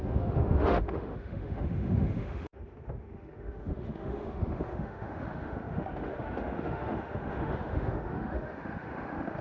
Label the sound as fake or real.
fake